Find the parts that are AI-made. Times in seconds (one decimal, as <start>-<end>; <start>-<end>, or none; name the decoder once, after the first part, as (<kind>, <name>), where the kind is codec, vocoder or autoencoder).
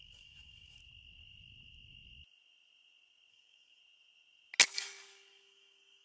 0.0-0.8 (codec, DAC); 3.3-3.8; 4.7-6.0